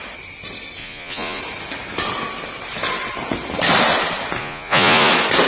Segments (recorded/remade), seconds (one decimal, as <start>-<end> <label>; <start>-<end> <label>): 0.0-0.8 recorded; 0.8-1.4 remade; 1.4-4.4 recorded; 4.4-5.1 remade; 5.1-5.5 recorded